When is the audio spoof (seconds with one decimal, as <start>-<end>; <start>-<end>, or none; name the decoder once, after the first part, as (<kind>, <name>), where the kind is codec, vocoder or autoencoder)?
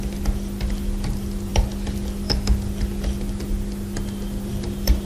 none